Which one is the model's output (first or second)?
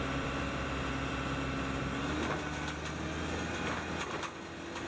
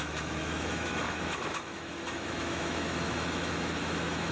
second